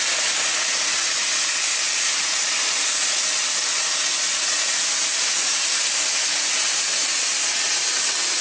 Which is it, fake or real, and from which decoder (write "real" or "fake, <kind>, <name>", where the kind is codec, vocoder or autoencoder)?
real